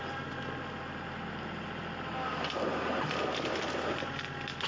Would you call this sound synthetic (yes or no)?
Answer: no